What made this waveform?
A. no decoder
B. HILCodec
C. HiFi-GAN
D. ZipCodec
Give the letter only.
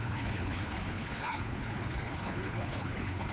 B